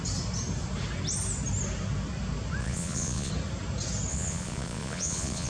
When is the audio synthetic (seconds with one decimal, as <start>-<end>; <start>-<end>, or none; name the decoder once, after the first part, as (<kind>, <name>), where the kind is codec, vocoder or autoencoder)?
2.6-3.3 (vocoder, Vocos); 4.1-5.5